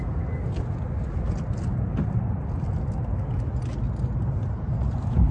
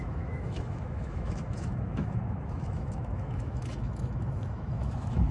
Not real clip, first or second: second